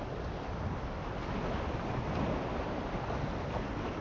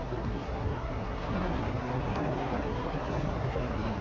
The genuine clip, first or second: first